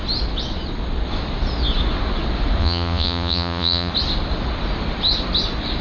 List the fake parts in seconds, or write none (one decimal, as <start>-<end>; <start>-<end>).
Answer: 2.6-3.9